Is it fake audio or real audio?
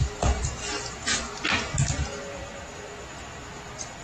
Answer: real